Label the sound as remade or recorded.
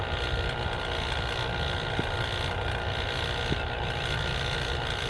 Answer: recorded